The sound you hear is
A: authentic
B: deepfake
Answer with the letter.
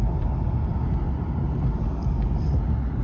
A